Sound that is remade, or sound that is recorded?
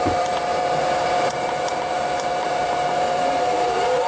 remade